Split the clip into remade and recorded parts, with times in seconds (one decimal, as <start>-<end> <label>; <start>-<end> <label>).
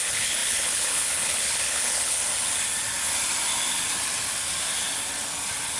0.0-2.2 remade; 2.2-5.8 recorded